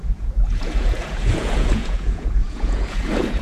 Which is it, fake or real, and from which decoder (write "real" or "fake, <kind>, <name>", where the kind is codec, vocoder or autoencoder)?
fake, vocoder, Vocos